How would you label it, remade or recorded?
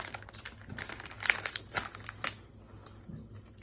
recorded